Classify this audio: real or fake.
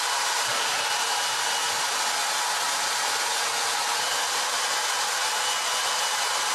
real